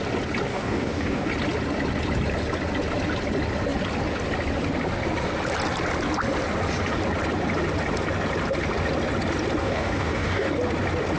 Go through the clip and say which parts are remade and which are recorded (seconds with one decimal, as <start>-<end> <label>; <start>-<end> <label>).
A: 0.0-0.5 recorded; 0.5-1.3 remade; 1.3-9.6 recorded; 9.6-10.5 remade; 10.5-11.2 recorded